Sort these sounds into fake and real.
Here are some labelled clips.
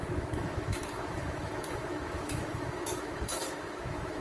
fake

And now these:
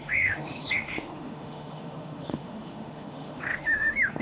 fake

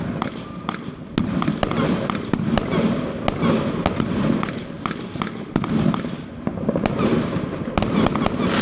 real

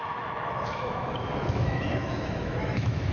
fake